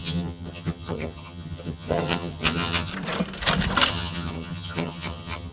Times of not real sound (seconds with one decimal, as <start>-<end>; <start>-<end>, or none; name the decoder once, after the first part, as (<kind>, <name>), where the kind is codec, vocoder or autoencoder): 0.0-2.9 (vocoder, HiFi-GAN); 3.9-5.5

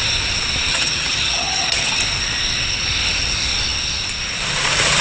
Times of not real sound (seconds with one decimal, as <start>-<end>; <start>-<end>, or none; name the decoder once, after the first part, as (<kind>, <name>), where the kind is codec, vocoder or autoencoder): 0.7-2.0 (vocoder, HiFi-GAN)

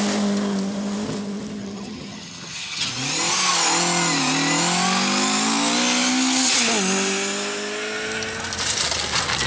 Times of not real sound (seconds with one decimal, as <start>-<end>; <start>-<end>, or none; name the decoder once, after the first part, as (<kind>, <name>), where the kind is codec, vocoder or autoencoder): 1.6-2.9 (vocoder, HiFi-GAN)

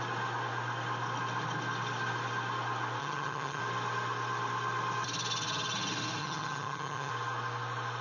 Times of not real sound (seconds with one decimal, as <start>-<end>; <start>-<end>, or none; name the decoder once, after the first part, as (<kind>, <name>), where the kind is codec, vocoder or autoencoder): 3.0-3.6 (vocoder, HiFi-GAN); 6.2-7.1

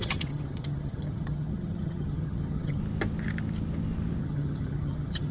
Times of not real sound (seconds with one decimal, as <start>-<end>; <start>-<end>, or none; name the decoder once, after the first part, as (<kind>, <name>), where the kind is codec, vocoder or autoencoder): 0.0-2.8 (vocoder, HiFi-GAN); 4.2-5.3